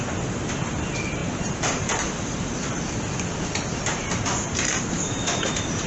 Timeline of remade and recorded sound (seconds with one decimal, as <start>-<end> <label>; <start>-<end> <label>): 0.0-1.2 recorded; 1.2-2.7 remade; 2.7-3.7 recorded; 3.7-5.9 remade